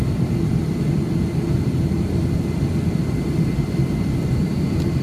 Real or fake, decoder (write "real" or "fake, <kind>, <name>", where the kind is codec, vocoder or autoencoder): real